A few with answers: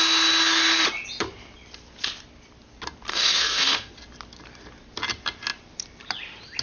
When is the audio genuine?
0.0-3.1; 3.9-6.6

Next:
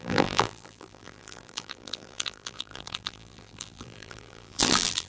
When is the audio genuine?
none

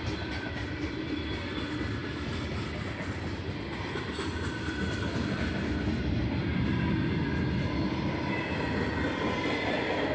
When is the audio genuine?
0.0-10.1